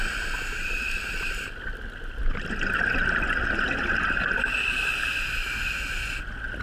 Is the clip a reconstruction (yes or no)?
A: no